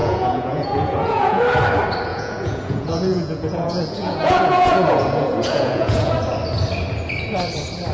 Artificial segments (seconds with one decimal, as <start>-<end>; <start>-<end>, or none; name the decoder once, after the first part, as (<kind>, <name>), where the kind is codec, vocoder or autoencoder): 0.0-1.4 (vocoder, Vocos); 2.1-6.1